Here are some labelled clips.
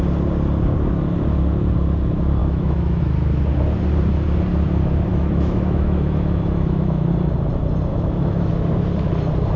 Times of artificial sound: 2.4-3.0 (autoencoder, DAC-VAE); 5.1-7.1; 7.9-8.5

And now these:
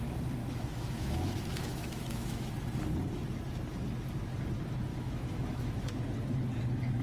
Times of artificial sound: 0.4-2.5 (autoencoder, DAC-VAE); 4.9-6.0

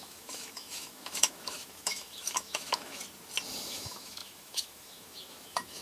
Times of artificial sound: 0.0-3.0 (autoencoder, DAC-VAE); 3.7-5.8

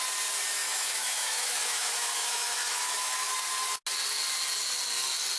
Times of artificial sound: 0.6-3.3 (autoencoder, DAC-VAE)